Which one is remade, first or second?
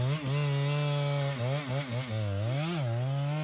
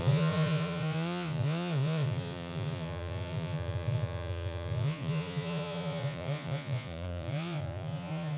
second